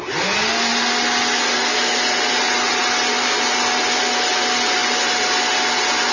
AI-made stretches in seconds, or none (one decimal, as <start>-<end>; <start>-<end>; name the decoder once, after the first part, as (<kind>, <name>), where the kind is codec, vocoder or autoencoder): none